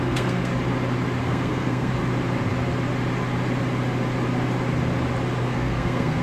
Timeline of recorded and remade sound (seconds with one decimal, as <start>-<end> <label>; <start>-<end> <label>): 0.0-0.5 remade; 0.5-1.2 recorded; 1.2-1.9 remade; 1.9-5.4 recorded; 5.4-6.2 remade